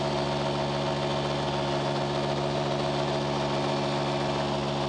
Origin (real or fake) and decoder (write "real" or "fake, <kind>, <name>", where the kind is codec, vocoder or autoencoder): real